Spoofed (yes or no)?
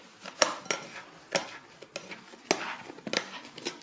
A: no